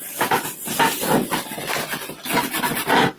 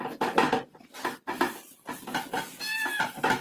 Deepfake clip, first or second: first